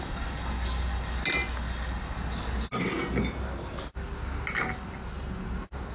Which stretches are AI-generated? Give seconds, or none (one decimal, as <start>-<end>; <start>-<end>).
none